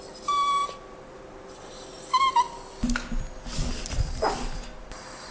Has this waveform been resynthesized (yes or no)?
no